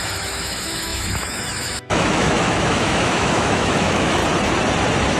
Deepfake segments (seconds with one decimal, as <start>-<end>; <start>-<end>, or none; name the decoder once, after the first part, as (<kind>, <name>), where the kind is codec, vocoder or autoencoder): 0.0-4.2 (autoencoder, DAC-VAE)